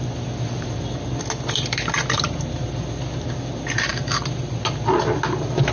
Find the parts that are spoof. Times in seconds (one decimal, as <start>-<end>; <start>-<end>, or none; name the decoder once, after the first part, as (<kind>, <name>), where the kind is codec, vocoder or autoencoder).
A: 3.9-4.6 (vocoder, BigVGAN v2)